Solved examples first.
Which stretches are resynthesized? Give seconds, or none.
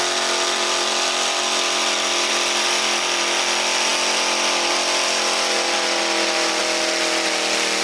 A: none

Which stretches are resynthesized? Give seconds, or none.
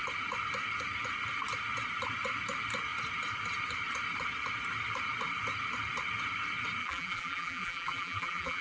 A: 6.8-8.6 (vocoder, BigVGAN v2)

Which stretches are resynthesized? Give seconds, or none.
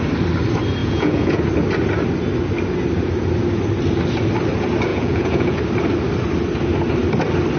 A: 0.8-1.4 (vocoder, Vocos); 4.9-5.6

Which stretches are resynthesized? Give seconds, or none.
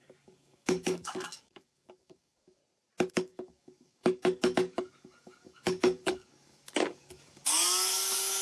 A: 0.0-2.6 (codec, DAC); 3.1-8.4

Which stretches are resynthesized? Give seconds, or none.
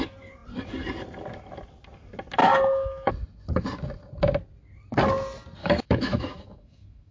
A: 2.4-3.1 (autoencoder, DAC-VAE); 5.6-7.1